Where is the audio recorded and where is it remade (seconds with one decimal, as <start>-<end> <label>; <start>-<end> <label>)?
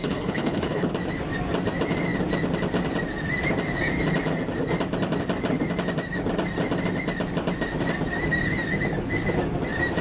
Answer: 0.0-0.9 remade; 0.9-10.0 recorded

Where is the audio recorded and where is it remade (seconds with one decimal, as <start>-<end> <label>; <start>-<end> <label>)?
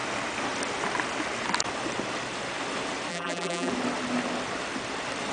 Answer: 0.0-3.1 recorded; 3.1-3.7 remade; 3.7-5.3 recorded